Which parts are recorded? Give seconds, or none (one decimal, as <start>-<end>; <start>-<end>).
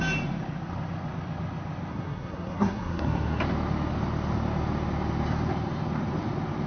0.0-1.9; 3.4-6.7